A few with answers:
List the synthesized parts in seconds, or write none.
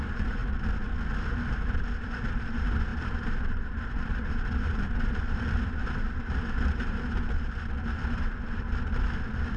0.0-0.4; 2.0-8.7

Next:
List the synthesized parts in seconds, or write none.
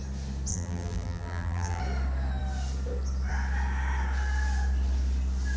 0.5-1.8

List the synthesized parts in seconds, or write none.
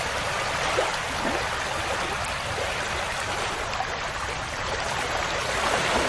0.0-0.9; 4.6-6.1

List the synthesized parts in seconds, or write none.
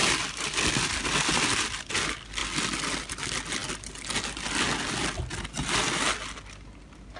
none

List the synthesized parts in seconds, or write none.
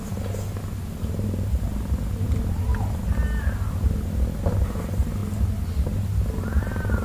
none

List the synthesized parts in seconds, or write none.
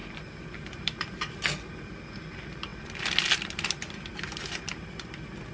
0.0-1.3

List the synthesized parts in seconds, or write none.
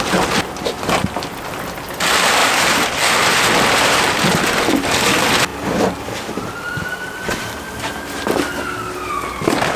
2.4-3.1; 5.5-9.1